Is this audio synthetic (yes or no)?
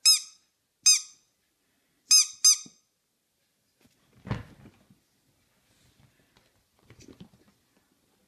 no